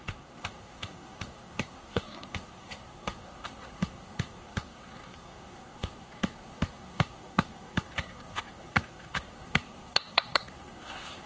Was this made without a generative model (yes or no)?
no